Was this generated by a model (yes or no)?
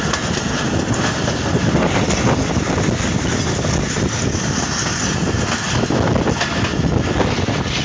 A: no